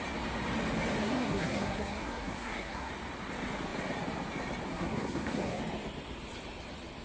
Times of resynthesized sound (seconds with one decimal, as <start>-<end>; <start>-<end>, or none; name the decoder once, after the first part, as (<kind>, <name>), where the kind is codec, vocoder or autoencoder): 1.0-2.9 (codec, SNAC); 4.7-5.6